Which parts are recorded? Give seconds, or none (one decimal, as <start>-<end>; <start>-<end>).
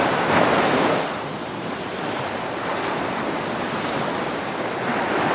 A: 0.0-1.3; 4.5-5.3